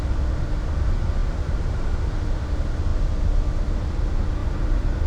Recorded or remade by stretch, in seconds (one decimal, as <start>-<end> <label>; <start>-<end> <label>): 0.0-1.2 recorded; 1.2-1.9 remade; 1.9-4.4 recorded; 4.4-5.1 remade